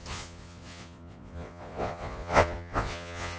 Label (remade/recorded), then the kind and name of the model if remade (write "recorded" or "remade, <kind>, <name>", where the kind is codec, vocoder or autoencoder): remade, vocoder, Vocos